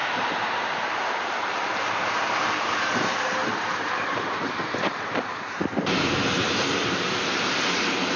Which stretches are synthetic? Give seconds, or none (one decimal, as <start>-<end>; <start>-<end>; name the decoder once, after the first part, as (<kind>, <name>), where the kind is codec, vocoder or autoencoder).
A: 0.0-8.2 (vocoder, BigVGAN v2)